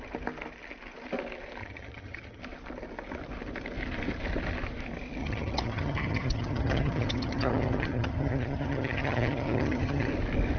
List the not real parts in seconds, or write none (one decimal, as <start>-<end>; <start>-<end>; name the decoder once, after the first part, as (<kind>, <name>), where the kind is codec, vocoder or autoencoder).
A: 1.6-2.4 (vocoder, HiFi-GAN); 5.2-10.1